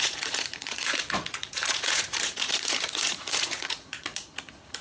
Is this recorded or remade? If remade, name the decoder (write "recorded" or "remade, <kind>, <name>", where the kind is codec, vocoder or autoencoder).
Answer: remade, vocoder, Vocos